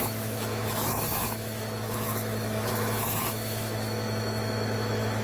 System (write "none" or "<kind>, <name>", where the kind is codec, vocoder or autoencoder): autoencoder, DAC-VAE